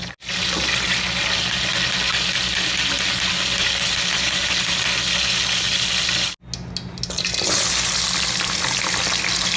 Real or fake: real